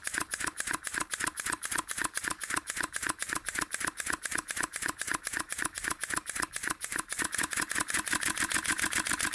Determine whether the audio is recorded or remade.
remade